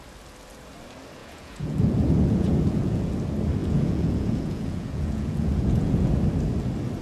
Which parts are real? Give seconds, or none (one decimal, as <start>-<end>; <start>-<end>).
0.0-1.2; 3.1-3.6; 6.1-7.0